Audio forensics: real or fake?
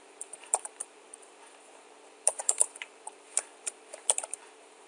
fake